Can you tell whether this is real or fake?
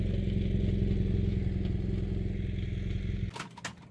real